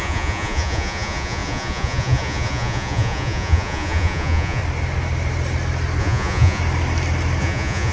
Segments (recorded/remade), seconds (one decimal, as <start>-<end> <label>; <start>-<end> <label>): 0.0-4.6 remade; 4.6-6.0 recorded; 6.0-6.6 remade; 6.6-7.4 recorded; 7.4-7.9 remade